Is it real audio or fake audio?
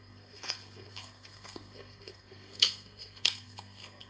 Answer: fake